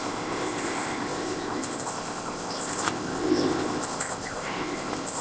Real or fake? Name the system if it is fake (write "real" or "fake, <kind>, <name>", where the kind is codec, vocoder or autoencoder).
fake, codec, ZipCodec